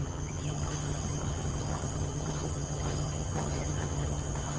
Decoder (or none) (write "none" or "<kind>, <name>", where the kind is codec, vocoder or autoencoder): vocoder, HiFi-GAN